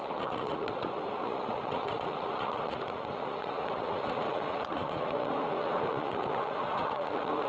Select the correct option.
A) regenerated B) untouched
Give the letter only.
A